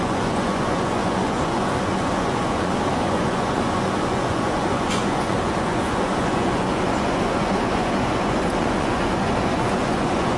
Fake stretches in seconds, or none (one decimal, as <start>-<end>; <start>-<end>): 0.0-10.4